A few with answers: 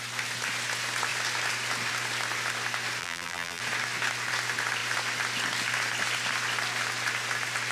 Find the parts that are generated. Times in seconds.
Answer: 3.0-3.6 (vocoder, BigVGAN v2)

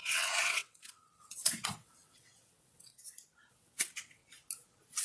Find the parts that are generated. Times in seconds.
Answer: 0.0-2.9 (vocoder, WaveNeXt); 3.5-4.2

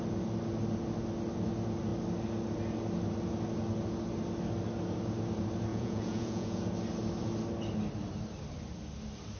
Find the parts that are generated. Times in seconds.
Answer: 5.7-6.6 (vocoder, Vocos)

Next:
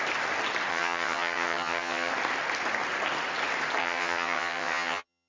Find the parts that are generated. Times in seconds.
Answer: 0.7-2.1 (vocoder, HiFi-GAN); 3.8-5.3

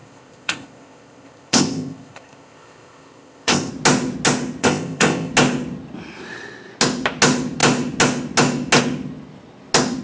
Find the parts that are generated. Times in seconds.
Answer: 0.0-3.7 (codec, ZipCodec); 4.6-5.3

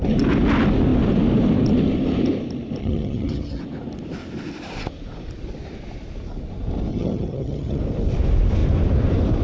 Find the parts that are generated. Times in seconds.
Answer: 2.8-3.6 (vocoder, HiFi-GAN); 6.9-7.8